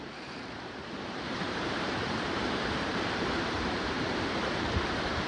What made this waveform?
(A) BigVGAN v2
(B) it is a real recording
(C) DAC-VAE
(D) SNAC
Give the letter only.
A